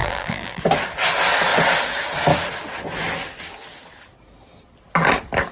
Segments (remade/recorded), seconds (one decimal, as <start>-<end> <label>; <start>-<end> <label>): 0.0-0.6 remade; 0.6-5.5 recorded